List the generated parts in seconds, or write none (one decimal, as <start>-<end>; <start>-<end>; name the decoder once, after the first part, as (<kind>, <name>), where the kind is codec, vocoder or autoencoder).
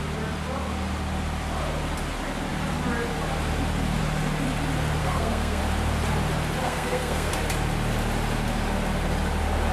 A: 5.0-5.6 (codec, SNAC); 6.6-7.3